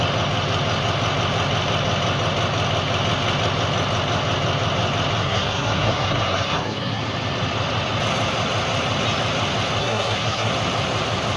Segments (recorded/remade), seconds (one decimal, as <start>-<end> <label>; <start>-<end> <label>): 0.0-5.2 recorded; 5.2-7.0 remade; 7.0-9.8 recorded; 9.8-10.5 remade; 10.5-11.4 recorded